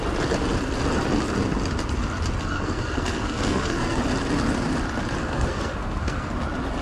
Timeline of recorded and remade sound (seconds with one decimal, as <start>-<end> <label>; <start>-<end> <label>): 0.0-2.4 recorded; 2.4-4.0 remade; 4.0-5.2 recorded; 5.2-6.3 remade; 6.3-6.8 recorded